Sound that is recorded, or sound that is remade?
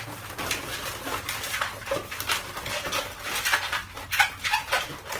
recorded